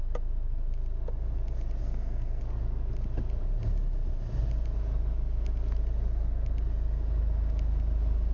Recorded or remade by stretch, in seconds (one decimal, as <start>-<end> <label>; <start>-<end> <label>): 0.0-1.8 recorded; 1.8-2.4 remade; 2.4-8.3 recorded